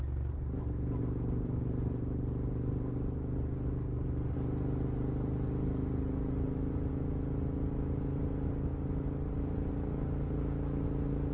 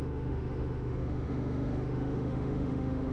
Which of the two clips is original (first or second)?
first